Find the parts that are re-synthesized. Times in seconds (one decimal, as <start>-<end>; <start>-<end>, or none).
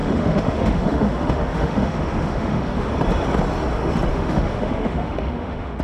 0.0-2.9; 4.1-5.8